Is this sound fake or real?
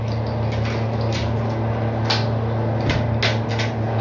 real